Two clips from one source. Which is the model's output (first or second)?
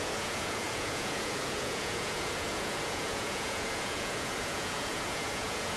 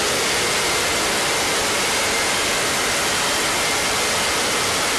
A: first